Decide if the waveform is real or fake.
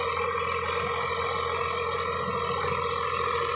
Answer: real